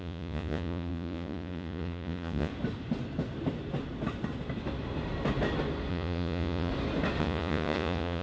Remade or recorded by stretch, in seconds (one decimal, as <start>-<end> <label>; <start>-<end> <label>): 0.0-2.5 remade; 2.5-5.9 recorded; 5.9-6.7 remade; 6.7-7.2 recorded; 7.2-8.2 remade